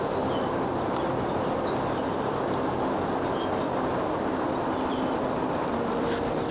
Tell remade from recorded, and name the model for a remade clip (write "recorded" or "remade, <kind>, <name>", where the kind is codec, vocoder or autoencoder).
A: recorded